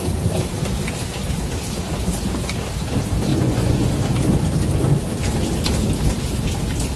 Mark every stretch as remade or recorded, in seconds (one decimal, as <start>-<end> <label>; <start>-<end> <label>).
0.0-3.3 recorded; 3.3-3.9 remade; 3.9-7.0 recorded